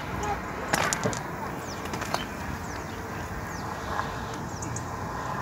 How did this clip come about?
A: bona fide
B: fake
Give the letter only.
A